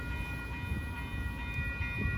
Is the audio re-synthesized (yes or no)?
no